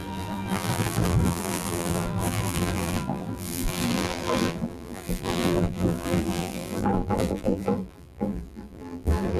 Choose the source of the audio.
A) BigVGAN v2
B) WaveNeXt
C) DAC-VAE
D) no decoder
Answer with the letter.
A